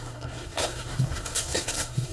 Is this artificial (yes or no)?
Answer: yes